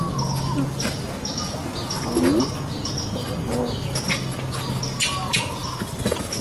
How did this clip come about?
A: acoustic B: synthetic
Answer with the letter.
A